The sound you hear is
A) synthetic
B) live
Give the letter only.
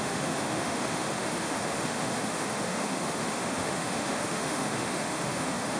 A